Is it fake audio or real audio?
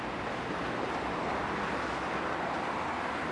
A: real